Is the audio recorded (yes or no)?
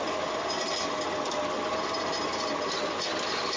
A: yes